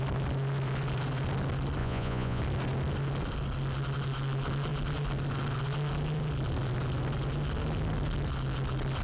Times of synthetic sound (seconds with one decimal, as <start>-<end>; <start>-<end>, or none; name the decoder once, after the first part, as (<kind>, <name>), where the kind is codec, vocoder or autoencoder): 1.8-2.4 (vocoder, Vocos)